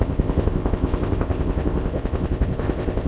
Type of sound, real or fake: fake